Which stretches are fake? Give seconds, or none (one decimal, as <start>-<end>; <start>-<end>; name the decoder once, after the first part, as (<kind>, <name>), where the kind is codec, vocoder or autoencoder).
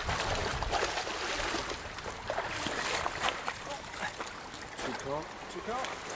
none